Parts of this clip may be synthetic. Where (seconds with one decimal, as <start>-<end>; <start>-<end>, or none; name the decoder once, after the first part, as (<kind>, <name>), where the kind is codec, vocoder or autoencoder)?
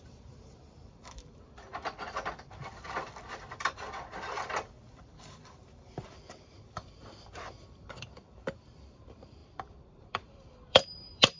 0.0-11.4 (vocoder, BigVGAN v2)